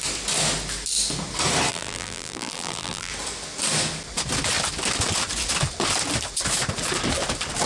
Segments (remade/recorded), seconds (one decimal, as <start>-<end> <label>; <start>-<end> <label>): 0.0-1.7 recorded; 1.7-3.1 remade; 3.1-7.7 recorded